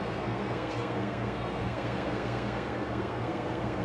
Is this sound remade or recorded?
remade